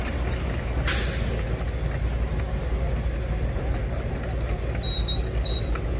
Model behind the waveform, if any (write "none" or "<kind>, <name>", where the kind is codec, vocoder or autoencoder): none